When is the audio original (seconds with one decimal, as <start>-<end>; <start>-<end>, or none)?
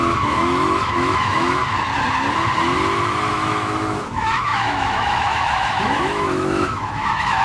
1.6-3.3